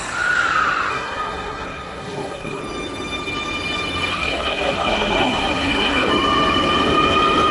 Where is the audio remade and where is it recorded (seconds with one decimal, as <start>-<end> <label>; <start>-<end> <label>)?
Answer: 0.0-0.9 recorded; 0.9-2.6 remade; 2.6-4.1 recorded; 4.1-6.1 remade; 6.1-7.5 recorded